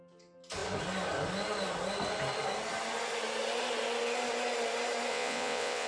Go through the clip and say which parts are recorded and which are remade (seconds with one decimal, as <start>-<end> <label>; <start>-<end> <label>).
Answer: 0.0-5.1 recorded; 5.1-5.9 remade